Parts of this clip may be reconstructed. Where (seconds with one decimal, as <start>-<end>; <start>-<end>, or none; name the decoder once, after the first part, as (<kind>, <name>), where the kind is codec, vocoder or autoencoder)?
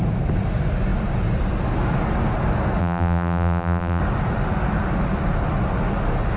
2.8-4.0 (vocoder, BigVGAN v2)